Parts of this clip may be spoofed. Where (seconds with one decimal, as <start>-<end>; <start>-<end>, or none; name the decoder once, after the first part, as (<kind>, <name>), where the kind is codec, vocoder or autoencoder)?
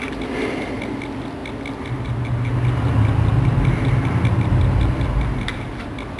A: none